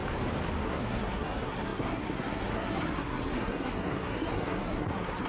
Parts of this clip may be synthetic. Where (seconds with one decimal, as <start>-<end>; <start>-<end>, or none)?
0.6-5.3